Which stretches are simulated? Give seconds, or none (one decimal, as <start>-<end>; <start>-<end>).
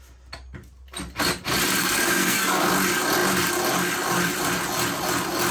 1.8-2.7